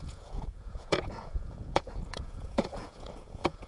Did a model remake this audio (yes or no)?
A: yes